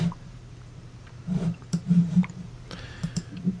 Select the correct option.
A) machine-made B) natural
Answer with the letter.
A